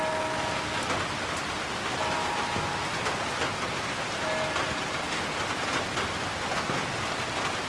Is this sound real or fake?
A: real